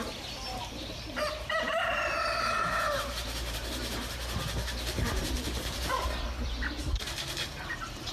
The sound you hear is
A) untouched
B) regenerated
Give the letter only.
B